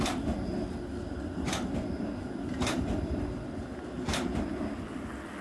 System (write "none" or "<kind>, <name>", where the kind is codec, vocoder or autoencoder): none